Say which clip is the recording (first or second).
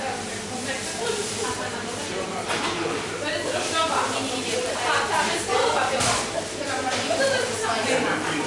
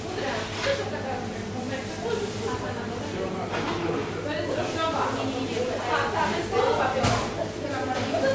second